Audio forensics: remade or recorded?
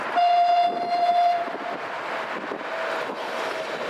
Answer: recorded